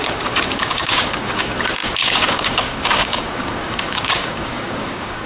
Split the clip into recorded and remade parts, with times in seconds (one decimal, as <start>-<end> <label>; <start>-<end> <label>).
0.0-5.3 remade